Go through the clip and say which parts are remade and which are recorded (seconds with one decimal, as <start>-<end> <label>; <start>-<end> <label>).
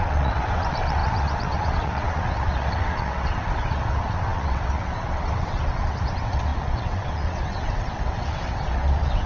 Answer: 0.0-9.3 remade